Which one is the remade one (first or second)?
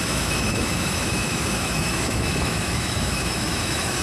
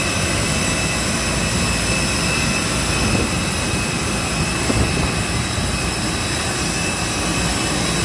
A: first